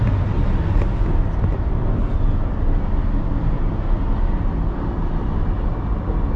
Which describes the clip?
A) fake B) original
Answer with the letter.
B